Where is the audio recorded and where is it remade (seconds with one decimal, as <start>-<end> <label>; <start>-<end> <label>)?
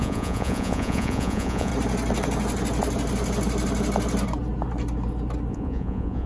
0.0-1.7 remade; 1.7-5.5 recorded; 5.5-6.3 remade